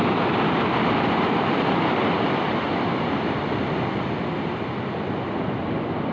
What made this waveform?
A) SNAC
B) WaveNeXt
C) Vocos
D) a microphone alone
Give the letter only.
D